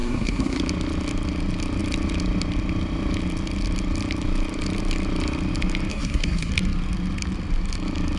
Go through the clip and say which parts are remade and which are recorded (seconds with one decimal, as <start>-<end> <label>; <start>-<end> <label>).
0.0-0.6 remade; 0.6-5.9 recorded; 5.9-6.5 remade; 6.5-8.2 recorded